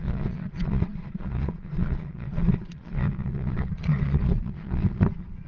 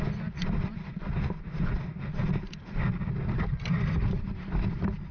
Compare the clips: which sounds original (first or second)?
second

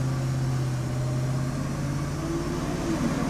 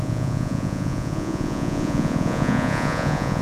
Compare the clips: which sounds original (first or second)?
first